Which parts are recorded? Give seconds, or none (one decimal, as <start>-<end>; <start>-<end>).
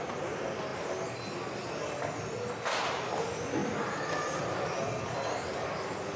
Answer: 0.0-6.2